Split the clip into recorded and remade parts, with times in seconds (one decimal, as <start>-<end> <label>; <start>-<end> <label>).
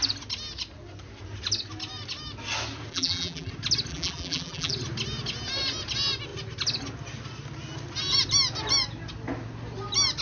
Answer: 0.0-2.9 recorded; 2.9-3.5 remade; 3.5-3.9 recorded; 3.9-4.7 remade; 4.7-10.2 recorded